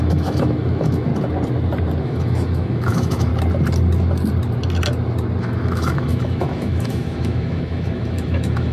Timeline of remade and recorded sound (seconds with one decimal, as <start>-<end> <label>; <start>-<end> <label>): 0.0-1.1 remade; 1.1-2.0 recorded; 2.0-3.3 remade; 3.3-5.4 recorded; 5.4-8.7 remade